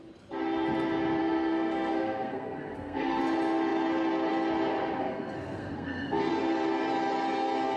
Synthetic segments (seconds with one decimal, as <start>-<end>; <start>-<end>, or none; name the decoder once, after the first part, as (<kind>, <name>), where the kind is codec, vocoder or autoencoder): 1.2-3.2 (codec, SNAC); 5.0-6.3